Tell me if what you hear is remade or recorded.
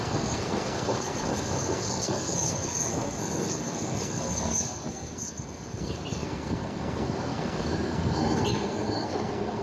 remade